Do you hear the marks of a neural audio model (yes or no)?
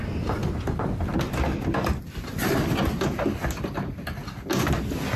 no